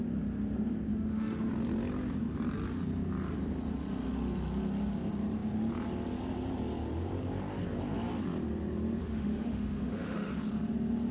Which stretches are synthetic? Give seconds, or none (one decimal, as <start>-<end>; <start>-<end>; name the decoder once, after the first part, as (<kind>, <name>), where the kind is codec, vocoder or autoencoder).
0.9-1.5 (autoencoder, DAC-VAE); 9.0-10.3